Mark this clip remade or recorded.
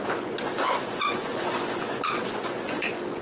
remade